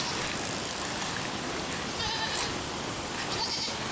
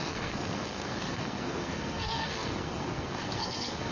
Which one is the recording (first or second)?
first